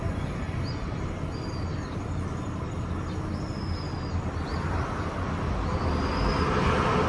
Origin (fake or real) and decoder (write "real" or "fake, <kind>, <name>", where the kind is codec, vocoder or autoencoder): real